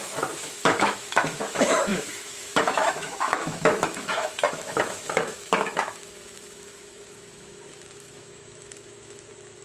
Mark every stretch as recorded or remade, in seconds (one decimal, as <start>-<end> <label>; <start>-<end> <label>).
0.0-9.6 remade